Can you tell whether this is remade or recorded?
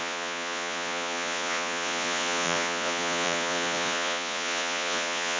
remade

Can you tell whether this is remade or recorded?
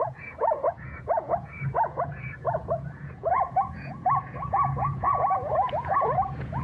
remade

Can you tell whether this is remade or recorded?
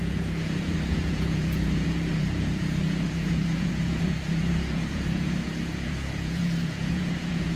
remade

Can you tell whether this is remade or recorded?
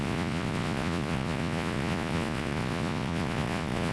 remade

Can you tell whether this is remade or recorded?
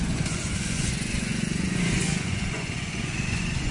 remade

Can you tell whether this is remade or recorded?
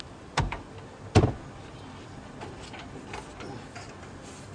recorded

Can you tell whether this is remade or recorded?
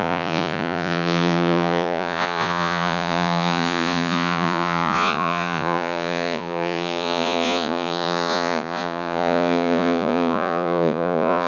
remade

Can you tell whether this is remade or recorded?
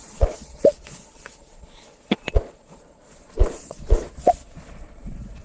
remade